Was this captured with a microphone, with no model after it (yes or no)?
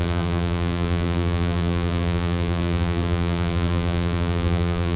no